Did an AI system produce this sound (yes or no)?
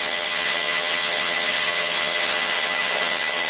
yes